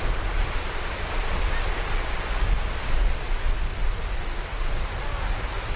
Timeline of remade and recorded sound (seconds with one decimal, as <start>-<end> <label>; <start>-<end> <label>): 0.0-5.8 recorded